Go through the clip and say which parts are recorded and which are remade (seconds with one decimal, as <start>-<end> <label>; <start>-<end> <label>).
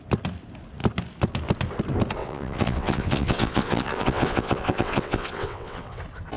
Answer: 0.0-2.2 recorded; 2.2-6.0 remade; 6.0-6.4 recorded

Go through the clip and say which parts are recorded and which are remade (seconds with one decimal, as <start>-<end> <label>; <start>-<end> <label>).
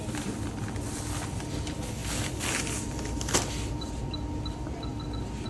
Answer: 0.0-5.5 recorded